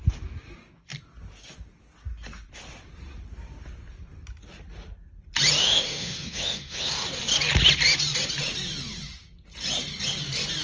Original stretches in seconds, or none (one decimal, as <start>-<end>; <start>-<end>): 0.0-5.6; 6.9-10.6